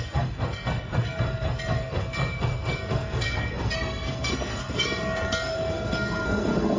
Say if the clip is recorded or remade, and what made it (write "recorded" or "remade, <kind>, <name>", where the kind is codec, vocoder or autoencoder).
remade, codec, SNAC